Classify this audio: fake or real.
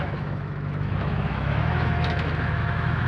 fake